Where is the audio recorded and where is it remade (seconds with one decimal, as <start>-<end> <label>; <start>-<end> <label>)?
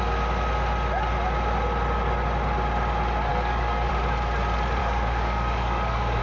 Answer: 0.0-3.3 recorded; 3.3-3.9 remade; 3.9-4.8 recorded; 4.8-6.2 remade